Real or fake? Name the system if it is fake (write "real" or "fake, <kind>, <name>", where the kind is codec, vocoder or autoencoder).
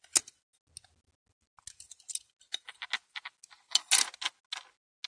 real